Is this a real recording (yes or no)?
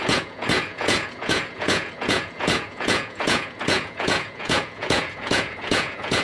no